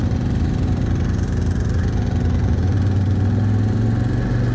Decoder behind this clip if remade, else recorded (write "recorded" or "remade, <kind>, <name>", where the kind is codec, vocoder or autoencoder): recorded